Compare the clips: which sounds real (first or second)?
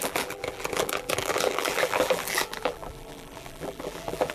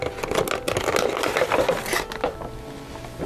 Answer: second